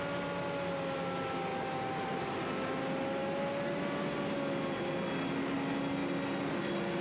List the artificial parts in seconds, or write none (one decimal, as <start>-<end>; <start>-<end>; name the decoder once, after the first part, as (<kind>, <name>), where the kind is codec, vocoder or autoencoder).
none